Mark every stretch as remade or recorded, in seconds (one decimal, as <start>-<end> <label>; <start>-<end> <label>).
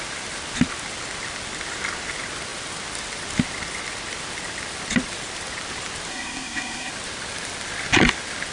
0.0-6.1 recorded; 6.1-6.9 remade; 6.9-8.5 recorded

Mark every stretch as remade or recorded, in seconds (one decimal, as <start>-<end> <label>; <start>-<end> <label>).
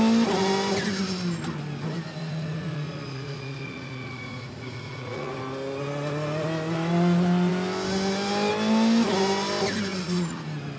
0.0-2.2 recorded; 2.2-5.3 remade; 5.3-9.9 recorded; 9.9-10.4 remade; 10.4-10.8 recorded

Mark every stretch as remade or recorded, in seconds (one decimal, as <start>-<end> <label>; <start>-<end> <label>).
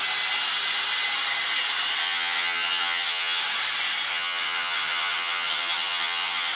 0.0-2.0 recorded; 2.0-3.4 remade; 3.4-4.1 recorded; 4.1-6.5 remade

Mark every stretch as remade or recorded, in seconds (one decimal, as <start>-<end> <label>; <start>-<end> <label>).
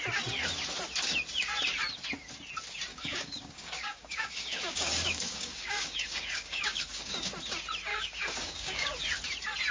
0.0-2.9 recorded; 2.9-7.3 remade; 7.3-7.9 recorded; 7.9-9.0 remade; 9.0-9.7 recorded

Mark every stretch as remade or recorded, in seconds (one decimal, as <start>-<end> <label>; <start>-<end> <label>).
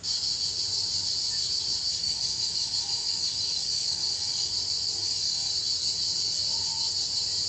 0.0-1.9 recorded; 1.9-4.5 remade; 4.5-5.0 recorded; 5.0-5.5 remade; 5.5-7.5 recorded